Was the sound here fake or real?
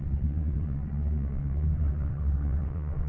fake